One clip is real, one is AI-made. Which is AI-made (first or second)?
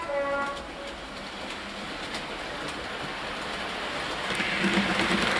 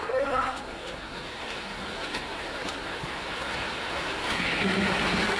second